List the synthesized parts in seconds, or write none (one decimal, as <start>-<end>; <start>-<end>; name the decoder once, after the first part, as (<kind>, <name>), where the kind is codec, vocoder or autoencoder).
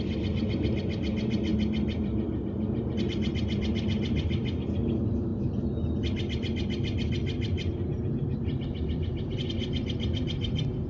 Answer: none